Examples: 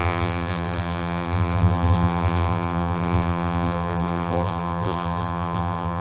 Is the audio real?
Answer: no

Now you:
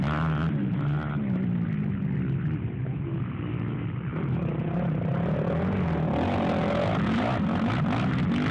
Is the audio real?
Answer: yes